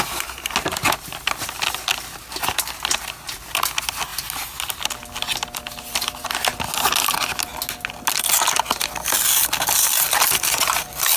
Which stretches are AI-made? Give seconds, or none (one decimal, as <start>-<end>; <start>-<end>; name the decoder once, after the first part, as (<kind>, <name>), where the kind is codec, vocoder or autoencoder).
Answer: none